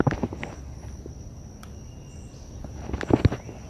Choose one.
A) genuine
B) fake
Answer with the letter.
A